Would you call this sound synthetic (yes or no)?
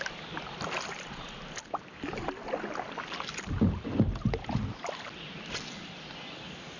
no